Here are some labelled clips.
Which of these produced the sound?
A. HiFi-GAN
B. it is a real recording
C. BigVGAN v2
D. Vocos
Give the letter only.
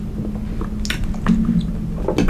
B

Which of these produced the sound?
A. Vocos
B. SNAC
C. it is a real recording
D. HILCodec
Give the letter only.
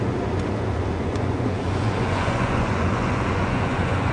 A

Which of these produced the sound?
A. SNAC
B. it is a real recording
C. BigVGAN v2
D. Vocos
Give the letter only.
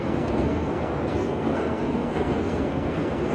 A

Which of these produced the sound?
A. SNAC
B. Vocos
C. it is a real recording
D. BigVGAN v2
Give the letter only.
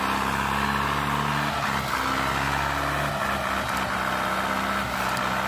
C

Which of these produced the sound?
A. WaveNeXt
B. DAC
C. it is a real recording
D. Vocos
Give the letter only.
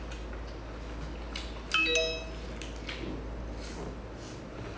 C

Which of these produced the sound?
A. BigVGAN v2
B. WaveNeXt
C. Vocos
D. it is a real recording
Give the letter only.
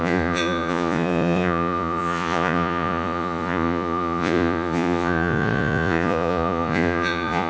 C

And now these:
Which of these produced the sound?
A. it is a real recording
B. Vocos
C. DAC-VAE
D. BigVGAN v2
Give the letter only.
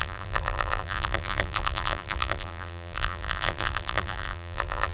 D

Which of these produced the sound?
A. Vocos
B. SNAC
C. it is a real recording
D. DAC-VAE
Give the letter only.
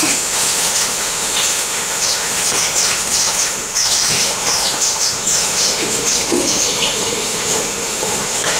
D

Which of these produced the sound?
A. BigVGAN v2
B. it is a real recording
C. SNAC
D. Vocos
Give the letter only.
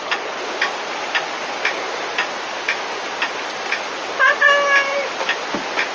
B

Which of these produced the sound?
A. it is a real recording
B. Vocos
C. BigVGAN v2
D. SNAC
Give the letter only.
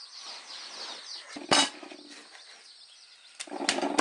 A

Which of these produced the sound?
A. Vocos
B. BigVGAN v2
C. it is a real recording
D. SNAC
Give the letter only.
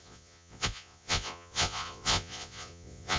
A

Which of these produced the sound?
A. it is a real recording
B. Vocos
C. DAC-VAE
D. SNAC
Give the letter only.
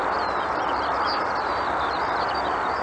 A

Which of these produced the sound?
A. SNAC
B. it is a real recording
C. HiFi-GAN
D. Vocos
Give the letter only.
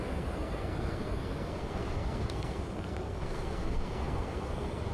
A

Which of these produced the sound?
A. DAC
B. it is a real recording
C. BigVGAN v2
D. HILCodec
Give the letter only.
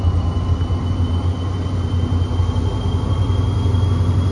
B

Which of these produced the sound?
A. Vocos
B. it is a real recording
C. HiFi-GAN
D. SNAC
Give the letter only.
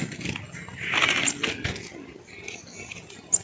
B